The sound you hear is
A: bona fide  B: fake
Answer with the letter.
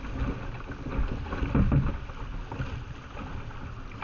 A